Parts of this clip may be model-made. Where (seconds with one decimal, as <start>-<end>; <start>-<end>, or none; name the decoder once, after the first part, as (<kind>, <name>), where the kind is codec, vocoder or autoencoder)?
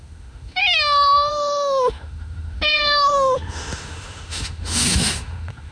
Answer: 0.0-0.6 (autoencoder, DAC-VAE); 1.3-5.7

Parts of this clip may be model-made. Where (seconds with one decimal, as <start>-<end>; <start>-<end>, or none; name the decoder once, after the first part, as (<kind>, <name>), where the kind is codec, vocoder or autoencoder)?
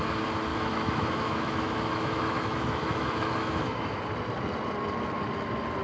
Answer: 0.5-4.0 (autoencoder, DAC-VAE)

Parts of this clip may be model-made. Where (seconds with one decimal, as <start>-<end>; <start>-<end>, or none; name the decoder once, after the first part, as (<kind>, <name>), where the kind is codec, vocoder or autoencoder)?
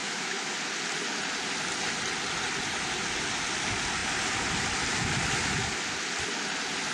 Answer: 0.0-0.5 (autoencoder, DAC-VAE)